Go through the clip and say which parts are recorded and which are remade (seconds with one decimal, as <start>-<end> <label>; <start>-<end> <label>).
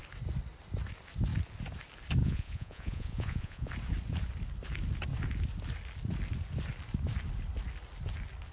0.0-2.2 recorded; 2.2-3.7 remade; 3.7-8.5 recorded